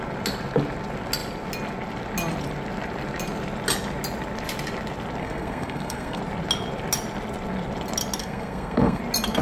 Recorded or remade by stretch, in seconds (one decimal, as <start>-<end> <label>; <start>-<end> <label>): 0.0-5.2 recorded; 5.2-6.2 remade; 6.2-8.2 recorded; 8.2-9.0 remade; 9.0-9.4 recorded